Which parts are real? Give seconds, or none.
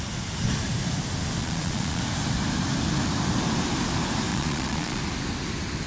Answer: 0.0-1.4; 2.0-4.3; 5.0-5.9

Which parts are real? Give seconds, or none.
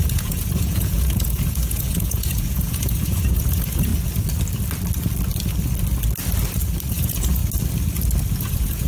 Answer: 3.9-6.9; 7.4-8.4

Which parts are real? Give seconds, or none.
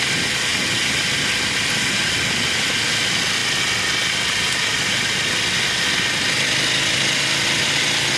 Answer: 0.0-8.2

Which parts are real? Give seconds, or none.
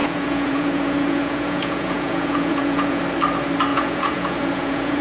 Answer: 3.0-3.7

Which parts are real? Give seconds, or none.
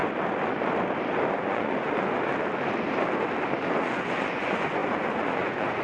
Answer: 0.0-1.3; 2.3-3.8